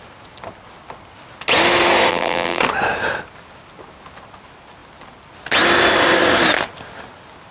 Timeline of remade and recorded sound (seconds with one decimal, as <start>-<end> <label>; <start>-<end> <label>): 0.0-2.1 recorded; 2.1-2.6 remade; 2.6-7.5 recorded